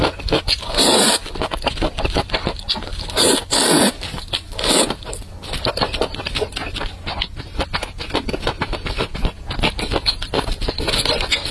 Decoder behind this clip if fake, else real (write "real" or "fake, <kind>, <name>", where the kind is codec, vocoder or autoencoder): real